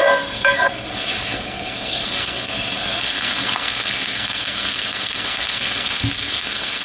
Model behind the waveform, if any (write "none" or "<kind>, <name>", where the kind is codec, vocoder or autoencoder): codec, SNAC